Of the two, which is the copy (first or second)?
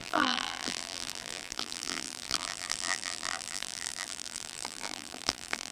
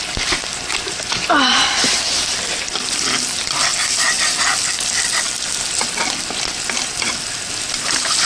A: first